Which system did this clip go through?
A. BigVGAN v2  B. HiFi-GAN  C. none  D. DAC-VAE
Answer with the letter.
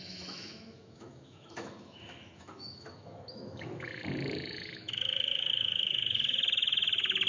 D